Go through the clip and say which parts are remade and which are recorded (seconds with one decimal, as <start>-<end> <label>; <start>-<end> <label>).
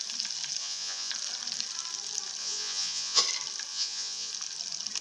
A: 0.0-0.6 recorded; 0.6-1.1 remade; 1.1-2.4 recorded; 2.4-3.2 remade; 3.2-3.7 recorded; 3.7-4.3 remade; 4.3-5.0 recorded